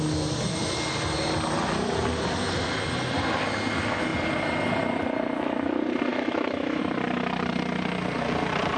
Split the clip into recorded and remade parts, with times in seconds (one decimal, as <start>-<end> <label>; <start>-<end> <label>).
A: 0.0-6.1 recorded; 6.1-6.8 remade; 6.8-8.8 recorded